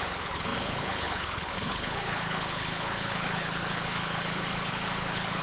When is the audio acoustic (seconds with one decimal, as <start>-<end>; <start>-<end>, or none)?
none